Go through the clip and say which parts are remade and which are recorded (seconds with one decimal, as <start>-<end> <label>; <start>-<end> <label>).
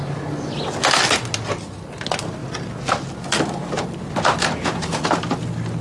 0.0-5.8 recorded